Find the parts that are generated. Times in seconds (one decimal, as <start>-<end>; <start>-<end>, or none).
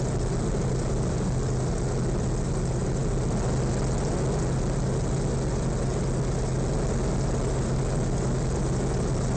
none